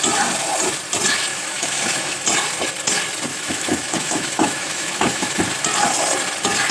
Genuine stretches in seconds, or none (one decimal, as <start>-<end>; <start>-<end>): 0.0-1.3; 2.2-3.3; 5.4-6.7